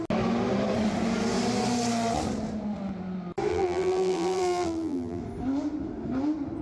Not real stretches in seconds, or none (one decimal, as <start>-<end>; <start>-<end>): 3.5-5.2